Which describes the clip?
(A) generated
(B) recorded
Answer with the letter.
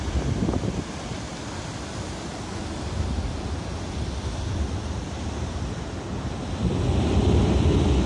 B